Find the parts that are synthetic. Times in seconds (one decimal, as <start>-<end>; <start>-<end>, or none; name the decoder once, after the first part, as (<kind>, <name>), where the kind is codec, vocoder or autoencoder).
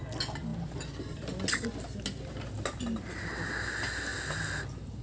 none